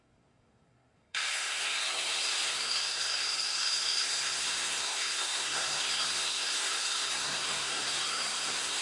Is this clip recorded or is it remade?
remade